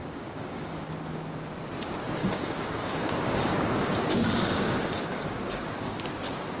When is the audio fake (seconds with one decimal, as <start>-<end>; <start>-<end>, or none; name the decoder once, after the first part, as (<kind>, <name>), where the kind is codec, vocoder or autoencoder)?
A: 0.0-0.9 (codec, DAC); 2.2-6.0